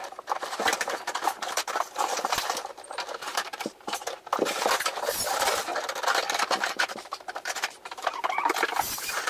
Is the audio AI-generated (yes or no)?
yes